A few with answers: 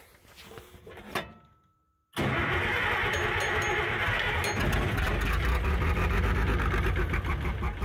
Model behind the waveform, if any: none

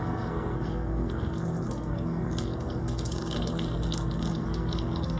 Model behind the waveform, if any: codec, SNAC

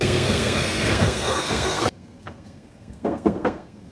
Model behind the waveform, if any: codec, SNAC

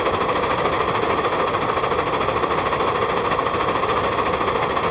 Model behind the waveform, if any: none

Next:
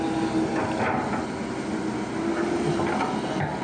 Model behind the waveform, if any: none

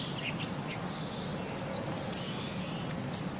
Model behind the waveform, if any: none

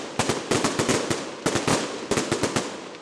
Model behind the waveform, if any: none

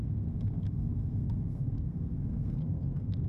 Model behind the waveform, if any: codec, SNAC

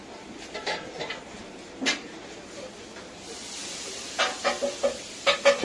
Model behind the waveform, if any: none